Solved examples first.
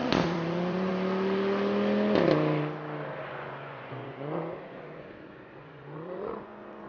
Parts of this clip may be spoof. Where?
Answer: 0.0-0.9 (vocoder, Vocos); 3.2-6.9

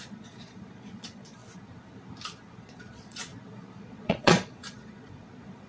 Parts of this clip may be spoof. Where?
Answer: 0.0-1.4 (vocoder, Vocos); 2.6-3.3; 3.8-5.7

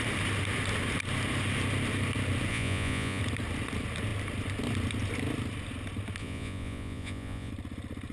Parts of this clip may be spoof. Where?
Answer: 2.5-3.2 (vocoder, Vocos); 6.2-7.5

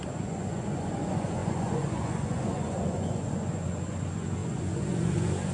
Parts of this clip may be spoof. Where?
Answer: 0.0-5.5 (vocoder, Vocos)

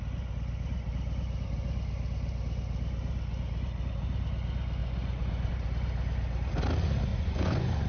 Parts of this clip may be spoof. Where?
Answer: 4.8-5.5 (vocoder, Vocos); 7.1-7.9